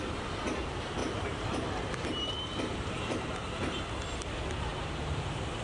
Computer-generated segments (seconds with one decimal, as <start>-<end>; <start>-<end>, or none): 1.0-3.9; 4.7-5.6